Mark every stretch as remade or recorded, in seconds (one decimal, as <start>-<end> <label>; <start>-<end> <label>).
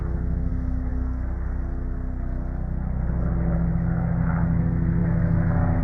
0.0-0.9 remade; 0.9-3.7 recorded; 3.7-5.8 remade